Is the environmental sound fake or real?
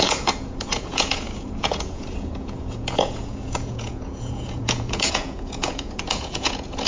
fake